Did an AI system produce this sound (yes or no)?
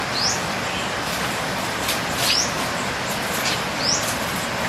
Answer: no